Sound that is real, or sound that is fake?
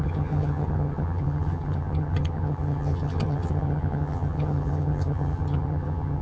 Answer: fake